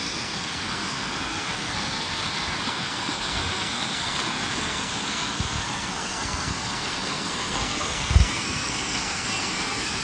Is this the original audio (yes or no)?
no